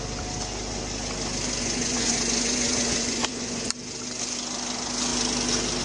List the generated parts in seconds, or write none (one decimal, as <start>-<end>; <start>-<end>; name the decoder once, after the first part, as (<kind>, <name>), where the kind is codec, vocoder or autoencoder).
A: 1.6-3.7 (vocoder, Vocos)